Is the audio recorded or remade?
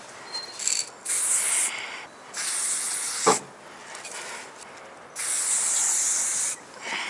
recorded